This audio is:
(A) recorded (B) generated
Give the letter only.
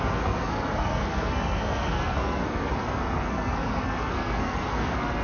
B